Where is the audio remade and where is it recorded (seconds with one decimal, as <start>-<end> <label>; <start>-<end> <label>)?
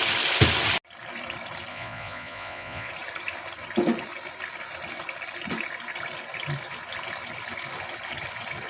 0.0-1.7 recorded; 1.7-2.9 remade; 2.9-8.7 recorded